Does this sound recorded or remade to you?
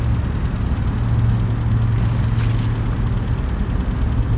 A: recorded